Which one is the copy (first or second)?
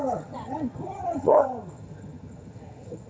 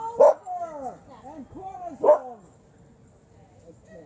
first